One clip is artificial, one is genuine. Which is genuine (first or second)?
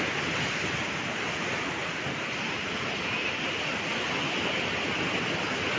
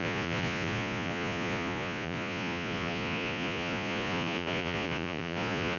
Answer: first